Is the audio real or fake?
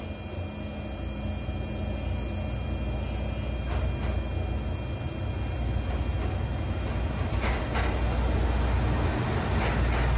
real